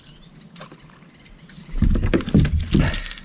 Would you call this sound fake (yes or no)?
no